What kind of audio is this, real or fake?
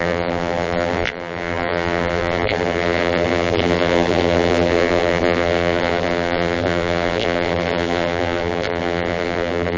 fake